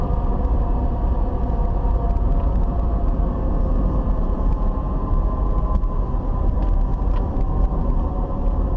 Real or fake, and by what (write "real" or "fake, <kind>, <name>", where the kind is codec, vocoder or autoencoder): real